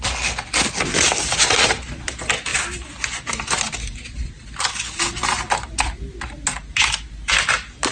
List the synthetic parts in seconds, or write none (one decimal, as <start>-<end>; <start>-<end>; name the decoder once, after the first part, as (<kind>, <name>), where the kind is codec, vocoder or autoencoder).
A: none